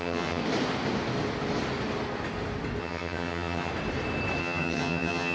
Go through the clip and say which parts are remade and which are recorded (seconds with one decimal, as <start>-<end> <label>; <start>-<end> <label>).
0.0-0.4 remade; 0.4-2.8 recorded; 2.8-3.7 remade; 3.7-4.4 recorded; 4.4-5.3 remade